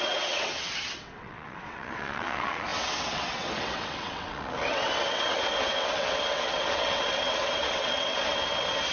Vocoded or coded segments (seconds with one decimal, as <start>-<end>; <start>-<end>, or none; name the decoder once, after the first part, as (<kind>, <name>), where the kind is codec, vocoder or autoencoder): 0.0-8.9 (vocoder, WaveNeXt)